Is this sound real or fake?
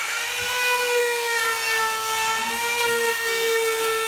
fake